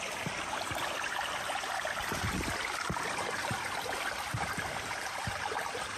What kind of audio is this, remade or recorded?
remade